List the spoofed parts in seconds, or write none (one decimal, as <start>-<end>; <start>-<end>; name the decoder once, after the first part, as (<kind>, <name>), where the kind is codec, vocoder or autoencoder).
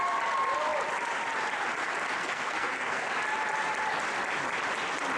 2.2-3.1 (codec, SNAC)